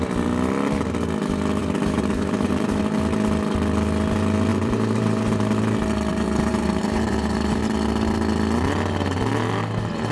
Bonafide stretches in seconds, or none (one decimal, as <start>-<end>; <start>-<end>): 0.0-1.6; 2.8-4.5; 5.6-6.1; 7.6-10.1